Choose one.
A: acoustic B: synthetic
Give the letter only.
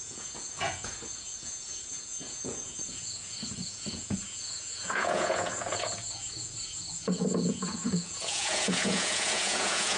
B